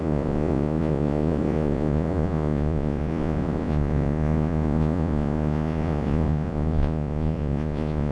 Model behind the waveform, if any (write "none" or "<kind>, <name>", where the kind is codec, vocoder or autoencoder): vocoder, Vocos